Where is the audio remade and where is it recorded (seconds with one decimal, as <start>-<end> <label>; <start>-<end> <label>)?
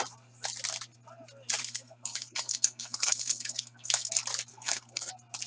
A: 0.0-1.6 recorded; 1.6-4.1 remade; 4.1-4.5 recorded; 4.5-5.1 remade; 5.1-5.5 recorded